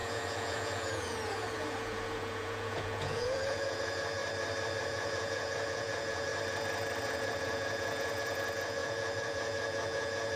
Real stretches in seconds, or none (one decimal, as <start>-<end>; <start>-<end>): 4.2-4.8; 6.3-7.0